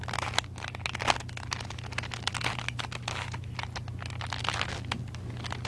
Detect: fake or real real